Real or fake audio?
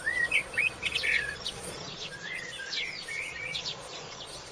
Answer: fake